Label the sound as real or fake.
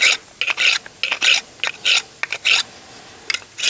real